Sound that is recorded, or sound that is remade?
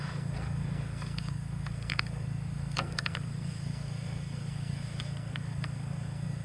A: remade